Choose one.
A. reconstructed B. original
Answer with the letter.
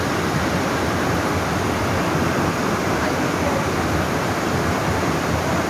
B